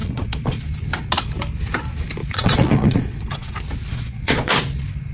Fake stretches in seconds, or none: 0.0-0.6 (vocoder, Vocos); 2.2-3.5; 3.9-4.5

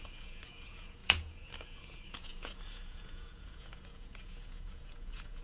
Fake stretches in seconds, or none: 0.0-5.4 (vocoder, Vocos)